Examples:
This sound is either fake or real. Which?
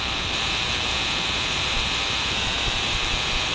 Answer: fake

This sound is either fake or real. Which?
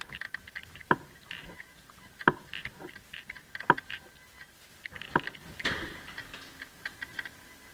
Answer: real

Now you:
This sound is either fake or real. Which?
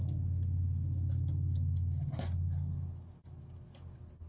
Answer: real